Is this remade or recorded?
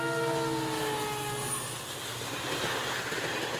recorded